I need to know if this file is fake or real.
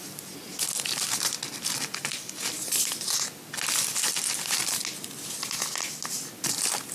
real